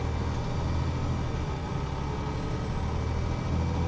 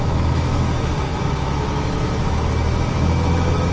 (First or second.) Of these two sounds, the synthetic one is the second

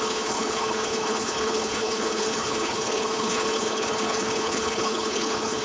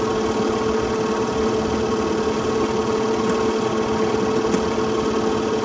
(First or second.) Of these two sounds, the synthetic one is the first